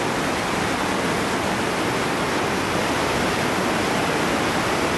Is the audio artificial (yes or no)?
no